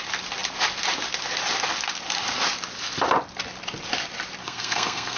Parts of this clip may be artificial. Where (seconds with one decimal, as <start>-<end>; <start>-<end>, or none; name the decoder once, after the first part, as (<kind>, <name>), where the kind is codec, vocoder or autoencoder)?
4.4-5.2 (codec, SNAC)